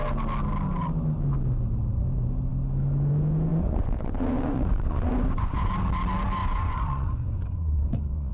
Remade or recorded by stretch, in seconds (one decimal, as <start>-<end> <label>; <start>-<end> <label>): 0.0-3.5 recorded; 3.5-5.7 remade; 5.7-6.4 recorded; 6.4-8.3 remade